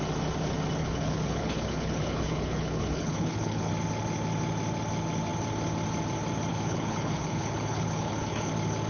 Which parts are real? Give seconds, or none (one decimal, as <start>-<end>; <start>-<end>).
0.0-0.8; 3.7-6.5; 8.5-8.9